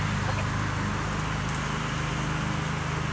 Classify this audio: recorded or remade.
recorded